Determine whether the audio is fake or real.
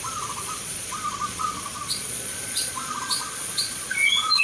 fake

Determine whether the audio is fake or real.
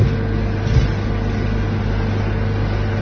real